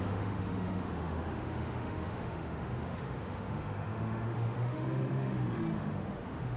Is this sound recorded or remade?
remade